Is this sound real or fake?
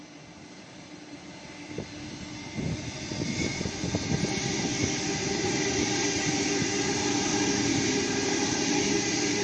real